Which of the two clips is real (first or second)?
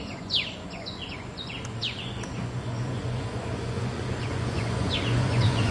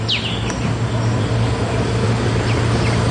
second